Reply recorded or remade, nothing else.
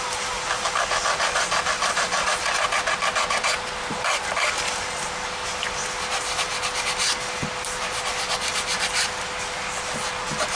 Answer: recorded